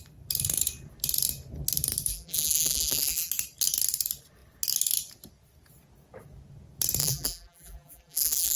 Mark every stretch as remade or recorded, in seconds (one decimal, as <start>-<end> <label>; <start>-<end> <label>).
0.0-2.1 recorded; 2.1-3.3 remade; 3.3-7.0 recorded; 7.0-8.6 remade